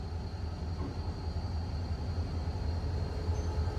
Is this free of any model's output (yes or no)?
yes